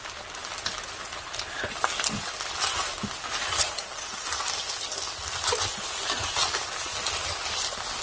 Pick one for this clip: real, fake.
real